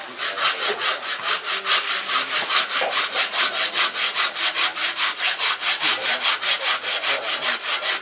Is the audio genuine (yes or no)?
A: yes